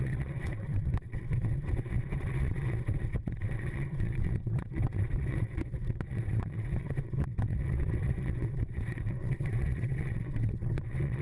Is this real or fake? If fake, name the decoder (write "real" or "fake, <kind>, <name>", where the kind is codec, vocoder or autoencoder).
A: fake, vocoder, WaveNeXt